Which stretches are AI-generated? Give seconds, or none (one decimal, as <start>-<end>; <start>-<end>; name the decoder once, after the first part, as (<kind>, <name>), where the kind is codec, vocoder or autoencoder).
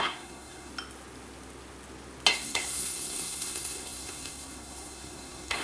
0.0-0.7 (codec, SNAC); 2.3-5.6